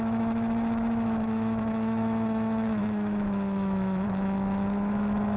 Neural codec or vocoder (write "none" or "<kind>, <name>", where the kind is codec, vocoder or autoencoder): autoencoder, DAC-VAE